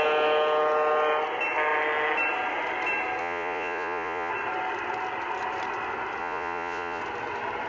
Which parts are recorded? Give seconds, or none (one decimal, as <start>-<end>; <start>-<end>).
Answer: 0.0-3.2; 4.3-6.2; 7.0-7.7